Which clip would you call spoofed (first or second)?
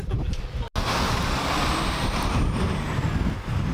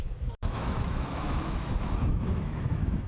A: second